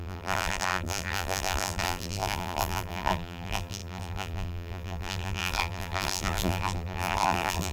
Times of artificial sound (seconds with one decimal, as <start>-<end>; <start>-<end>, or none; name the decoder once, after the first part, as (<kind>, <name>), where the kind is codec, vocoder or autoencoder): 0.0-7.7 (vocoder, BigVGAN v2)